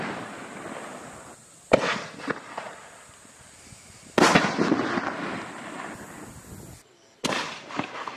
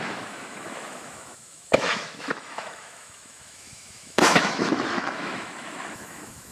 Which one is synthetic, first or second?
second